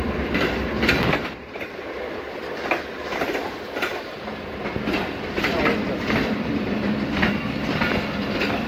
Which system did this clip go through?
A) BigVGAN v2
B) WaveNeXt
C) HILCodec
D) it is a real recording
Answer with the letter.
A